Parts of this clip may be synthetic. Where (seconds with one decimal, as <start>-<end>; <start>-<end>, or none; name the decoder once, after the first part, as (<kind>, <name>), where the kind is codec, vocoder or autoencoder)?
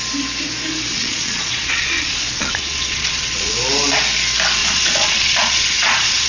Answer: 0.9-3.5 (vocoder, Vocos); 4.6-6.3